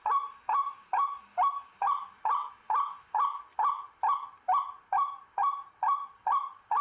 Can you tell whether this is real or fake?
real